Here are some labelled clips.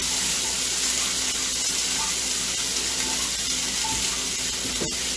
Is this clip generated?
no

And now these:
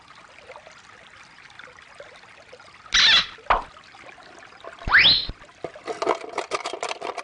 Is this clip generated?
no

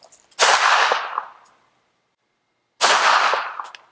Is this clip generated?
no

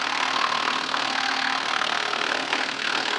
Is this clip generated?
yes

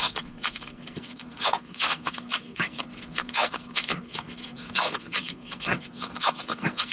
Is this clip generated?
yes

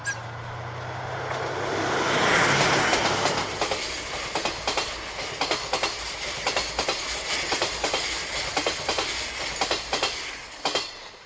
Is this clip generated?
no